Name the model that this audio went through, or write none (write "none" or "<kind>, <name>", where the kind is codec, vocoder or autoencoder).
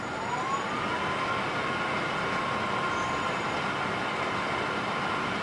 none